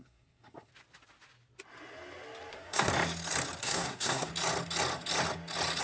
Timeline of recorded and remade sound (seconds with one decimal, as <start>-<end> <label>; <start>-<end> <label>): 0.0-0.7 remade; 0.7-2.5 recorded; 2.5-2.9 remade; 2.9-3.6 recorded; 3.6-4.3 remade; 4.3-5.8 recorded